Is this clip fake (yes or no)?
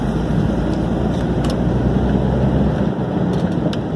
no